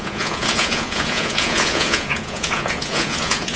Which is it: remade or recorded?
remade